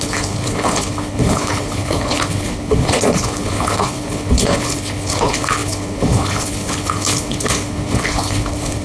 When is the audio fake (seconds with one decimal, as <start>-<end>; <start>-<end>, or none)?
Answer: 0.0-8.8